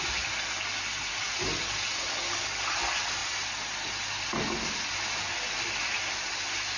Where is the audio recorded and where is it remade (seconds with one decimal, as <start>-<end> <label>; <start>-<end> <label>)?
0.0-6.8 recorded